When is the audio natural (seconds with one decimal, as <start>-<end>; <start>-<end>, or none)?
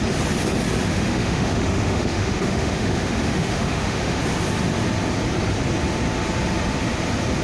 0.0-0.9; 4.2-7.4